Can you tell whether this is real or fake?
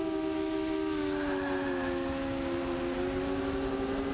real